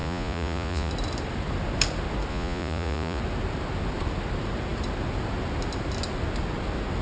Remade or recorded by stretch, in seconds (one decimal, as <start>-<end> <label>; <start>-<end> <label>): 0.0-0.9 remade; 0.9-2.3 recorded; 2.3-3.2 remade; 3.2-7.0 recorded